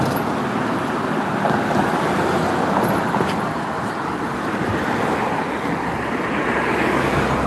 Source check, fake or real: real